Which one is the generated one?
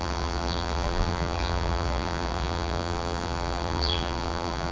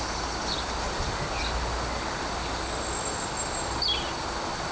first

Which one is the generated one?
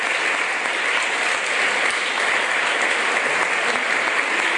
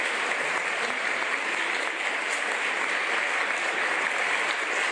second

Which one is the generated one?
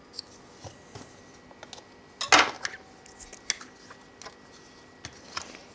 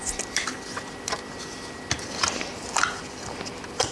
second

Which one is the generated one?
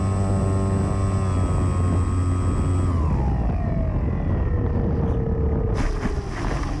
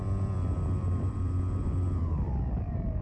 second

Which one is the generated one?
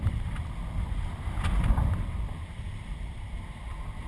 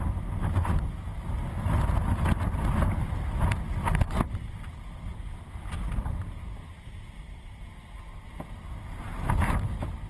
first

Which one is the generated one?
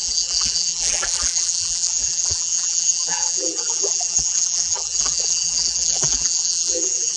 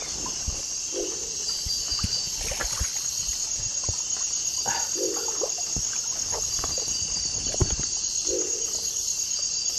first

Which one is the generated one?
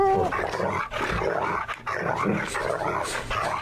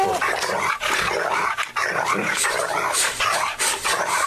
second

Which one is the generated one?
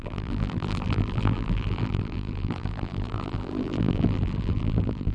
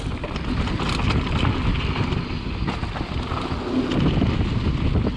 first